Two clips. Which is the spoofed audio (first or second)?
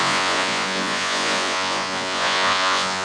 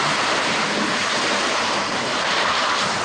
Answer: first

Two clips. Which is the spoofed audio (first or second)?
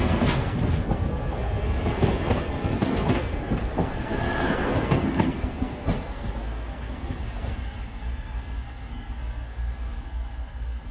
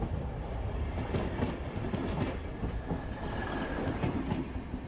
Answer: first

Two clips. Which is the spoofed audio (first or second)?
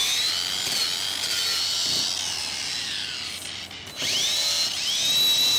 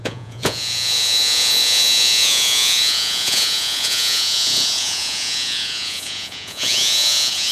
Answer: second